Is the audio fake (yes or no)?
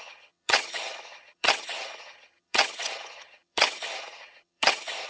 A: yes